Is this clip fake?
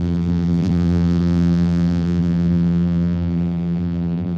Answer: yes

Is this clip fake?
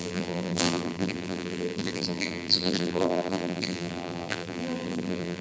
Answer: yes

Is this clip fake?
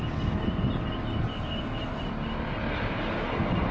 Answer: no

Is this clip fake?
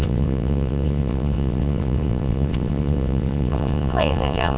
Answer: yes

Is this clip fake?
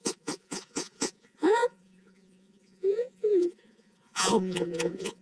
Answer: yes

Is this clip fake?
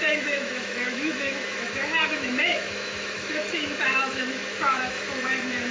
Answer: yes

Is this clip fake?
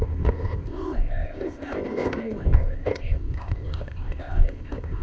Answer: yes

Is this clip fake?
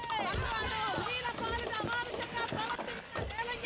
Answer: no